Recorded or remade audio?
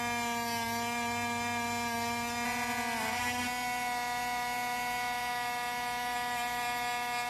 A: recorded